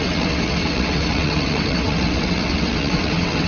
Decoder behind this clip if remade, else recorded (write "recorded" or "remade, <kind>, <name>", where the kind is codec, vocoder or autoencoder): remade, vocoder, WaveNeXt